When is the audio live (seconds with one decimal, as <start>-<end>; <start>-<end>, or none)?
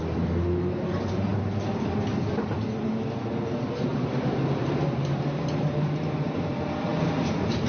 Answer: 0.0-3.9; 6.5-7.7